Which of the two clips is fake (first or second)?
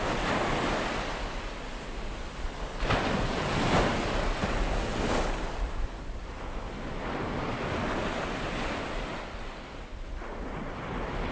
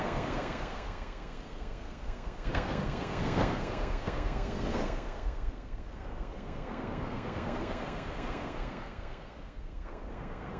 second